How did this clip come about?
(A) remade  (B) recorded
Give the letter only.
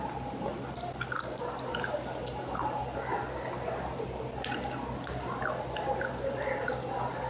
B